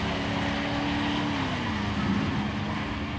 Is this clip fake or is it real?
real